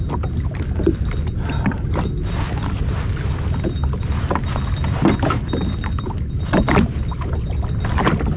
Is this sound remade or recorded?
recorded